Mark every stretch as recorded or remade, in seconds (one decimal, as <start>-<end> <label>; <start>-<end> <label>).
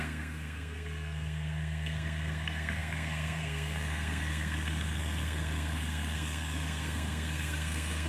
0.0-8.1 remade